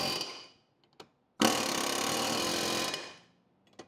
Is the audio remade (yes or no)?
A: no